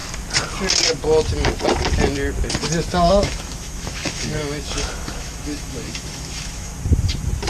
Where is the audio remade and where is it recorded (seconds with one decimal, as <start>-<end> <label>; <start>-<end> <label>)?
0.0-3.1 recorded; 3.1-6.7 remade; 6.7-7.5 recorded